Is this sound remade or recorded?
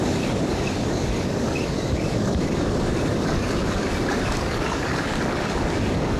remade